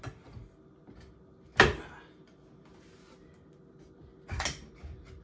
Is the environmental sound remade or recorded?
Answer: recorded